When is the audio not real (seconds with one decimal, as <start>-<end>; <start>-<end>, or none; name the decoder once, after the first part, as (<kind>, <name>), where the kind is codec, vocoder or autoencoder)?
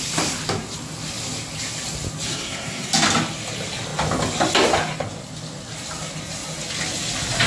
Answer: 2.3-2.9 (codec, SNAC)